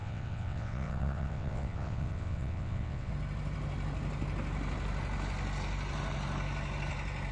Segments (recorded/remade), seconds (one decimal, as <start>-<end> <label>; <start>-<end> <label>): 0.0-3.1 remade; 3.1-7.3 recorded